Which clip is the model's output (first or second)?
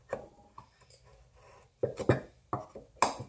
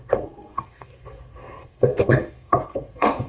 second